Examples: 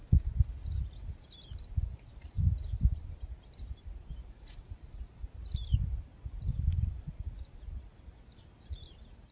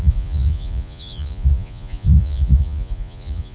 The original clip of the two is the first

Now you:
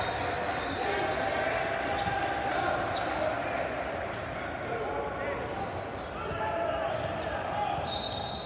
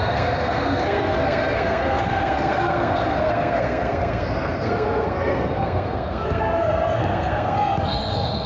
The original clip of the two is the first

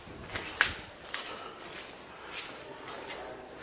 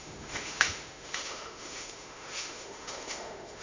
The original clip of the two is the first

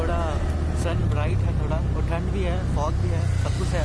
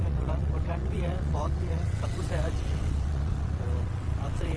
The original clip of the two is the first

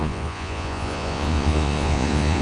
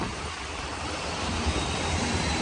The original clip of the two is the second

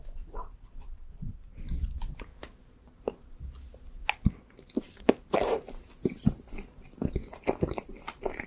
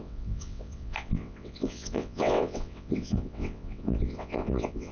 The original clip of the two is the first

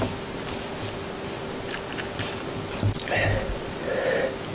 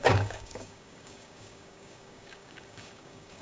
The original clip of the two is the first